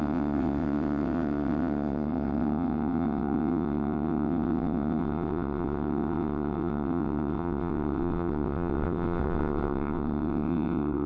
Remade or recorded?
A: remade